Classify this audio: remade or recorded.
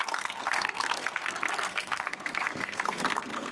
remade